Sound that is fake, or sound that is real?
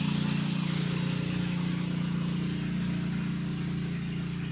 real